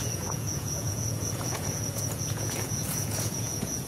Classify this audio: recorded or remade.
remade